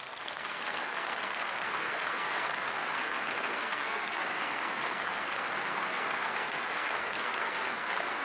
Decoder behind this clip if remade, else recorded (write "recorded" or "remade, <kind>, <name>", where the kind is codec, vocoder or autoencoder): remade, codec, SNAC